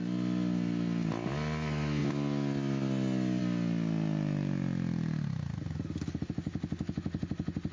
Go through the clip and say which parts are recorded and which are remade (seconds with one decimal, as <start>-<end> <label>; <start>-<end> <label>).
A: 0.0-7.7 recorded